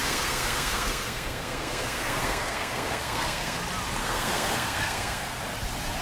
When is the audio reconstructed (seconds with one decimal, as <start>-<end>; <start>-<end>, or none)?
0.0-3.6; 4.0-5.4